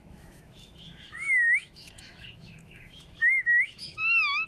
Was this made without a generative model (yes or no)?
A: no